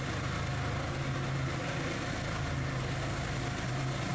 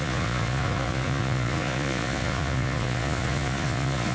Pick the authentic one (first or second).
first